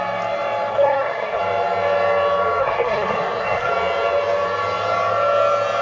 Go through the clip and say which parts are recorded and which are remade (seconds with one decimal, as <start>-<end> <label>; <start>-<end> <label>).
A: 0.0-0.7 recorded; 0.7-1.4 remade; 1.4-2.6 recorded; 2.6-3.7 remade; 3.7-5.8 recorded